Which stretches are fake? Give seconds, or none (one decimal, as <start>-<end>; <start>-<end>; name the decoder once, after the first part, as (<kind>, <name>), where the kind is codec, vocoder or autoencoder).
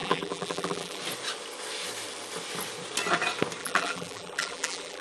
0.0-1.0 (vocoder, BigVGAN v2); 3.6-5.0